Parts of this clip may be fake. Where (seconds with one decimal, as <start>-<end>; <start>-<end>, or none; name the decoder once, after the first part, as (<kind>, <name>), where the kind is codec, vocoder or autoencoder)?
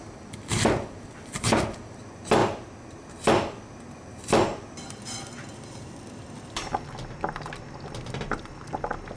none